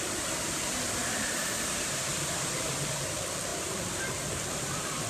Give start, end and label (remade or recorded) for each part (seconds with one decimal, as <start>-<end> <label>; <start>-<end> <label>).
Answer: 0.0-1.0 recorded; 1.0-2.9 remade; 2.9-3.5 recorded; 3.5-5.1 remade